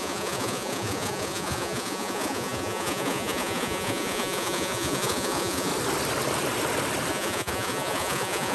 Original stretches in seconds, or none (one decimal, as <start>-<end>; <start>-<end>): 5.7-7.1